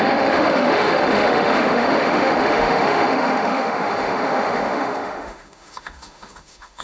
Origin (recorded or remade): remade